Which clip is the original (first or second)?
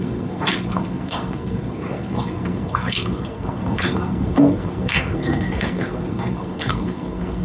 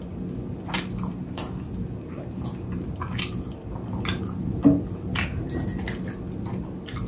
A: second